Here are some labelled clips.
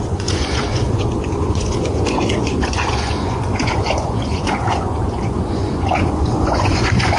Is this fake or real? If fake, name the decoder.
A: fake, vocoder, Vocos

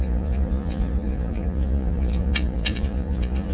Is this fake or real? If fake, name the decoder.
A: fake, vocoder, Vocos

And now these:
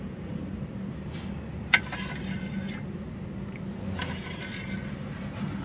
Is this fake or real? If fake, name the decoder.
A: real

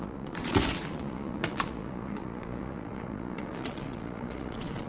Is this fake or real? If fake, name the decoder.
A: fake, vocoder, Vocos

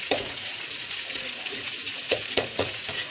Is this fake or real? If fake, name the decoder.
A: fake, vocoder, Vocos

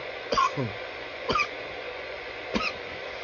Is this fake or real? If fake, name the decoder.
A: fake, vocoder, Vocos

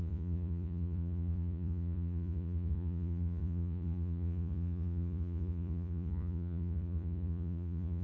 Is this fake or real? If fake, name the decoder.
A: fake, vocoder, Vocos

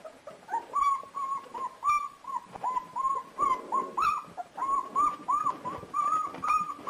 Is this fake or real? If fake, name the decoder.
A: real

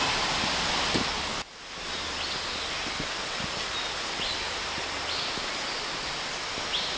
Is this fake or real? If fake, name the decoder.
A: real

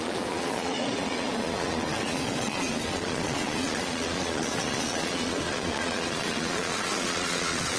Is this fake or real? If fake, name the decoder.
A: fake, vocoder, Vocos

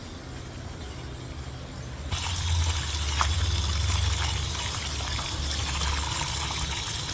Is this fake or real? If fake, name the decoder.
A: real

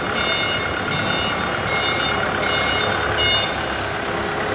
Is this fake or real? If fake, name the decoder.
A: real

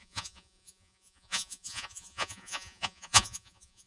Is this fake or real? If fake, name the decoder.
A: fake, vocoder, Vocos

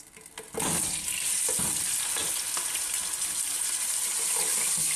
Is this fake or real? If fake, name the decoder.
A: real